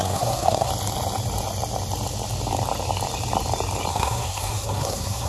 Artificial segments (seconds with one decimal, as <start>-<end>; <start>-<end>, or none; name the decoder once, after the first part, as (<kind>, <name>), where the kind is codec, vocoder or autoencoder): 0.0-0.7 (codec, SNAC); 3.9-5.3